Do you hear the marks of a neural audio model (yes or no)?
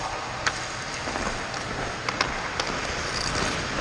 no